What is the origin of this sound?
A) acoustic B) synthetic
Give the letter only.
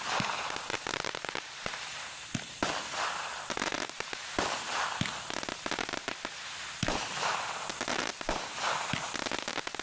A